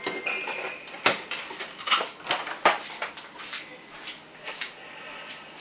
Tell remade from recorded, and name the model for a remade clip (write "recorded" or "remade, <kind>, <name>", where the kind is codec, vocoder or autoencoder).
recorded